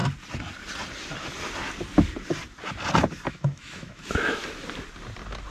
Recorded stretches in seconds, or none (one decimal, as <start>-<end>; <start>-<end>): 0.0-3.3; 4.4-5.5